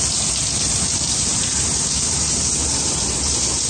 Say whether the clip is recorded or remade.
recorded